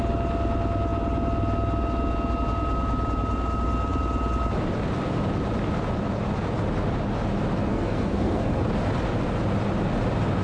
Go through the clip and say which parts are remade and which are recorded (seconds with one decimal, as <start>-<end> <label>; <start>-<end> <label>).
0.0-7.7 recorded; 7.7-8.6 remade; 8.6-10.4 recorded